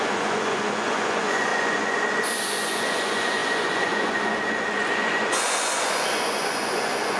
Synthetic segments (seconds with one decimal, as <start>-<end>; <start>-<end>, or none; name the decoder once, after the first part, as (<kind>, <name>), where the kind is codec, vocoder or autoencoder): 0.0-7.2 (vocoder, Vocos)